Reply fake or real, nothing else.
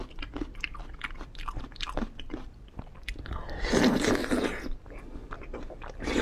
real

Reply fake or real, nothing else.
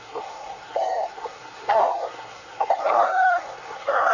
fake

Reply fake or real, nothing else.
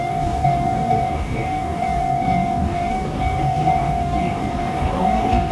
fake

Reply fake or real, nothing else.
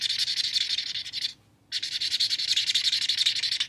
real